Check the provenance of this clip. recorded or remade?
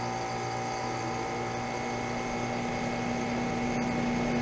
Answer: recorded